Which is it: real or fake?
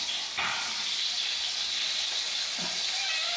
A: real